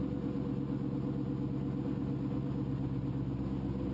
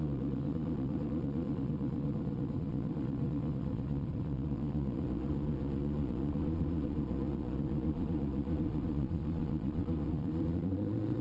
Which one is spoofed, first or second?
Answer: second